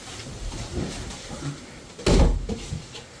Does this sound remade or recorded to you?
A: recorded